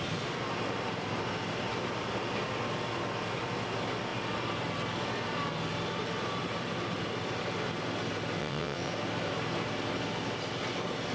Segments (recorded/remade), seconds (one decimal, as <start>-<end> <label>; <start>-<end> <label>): 0.0-8.4 recorded; 8.4-8.9 remade; 8.9-11.1 recorded